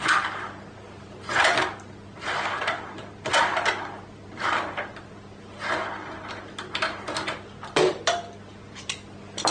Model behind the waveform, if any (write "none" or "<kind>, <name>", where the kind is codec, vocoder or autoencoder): none